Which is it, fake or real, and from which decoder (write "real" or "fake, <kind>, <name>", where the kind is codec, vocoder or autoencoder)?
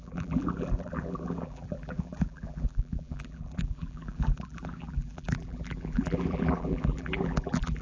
fake, vocoder, BigVGAN v2